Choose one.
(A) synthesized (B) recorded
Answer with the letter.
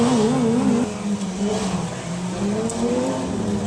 B